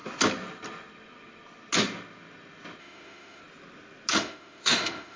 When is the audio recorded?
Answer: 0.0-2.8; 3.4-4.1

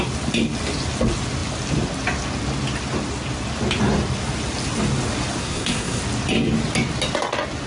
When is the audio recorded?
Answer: 0.0-5.4; 6.0-7.7

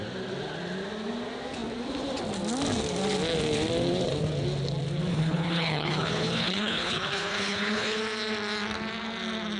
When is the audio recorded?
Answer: 0.0-5.1; 8.0-9.6

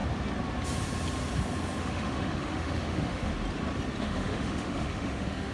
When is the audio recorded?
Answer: 0.0-1.8; 3.3-4.0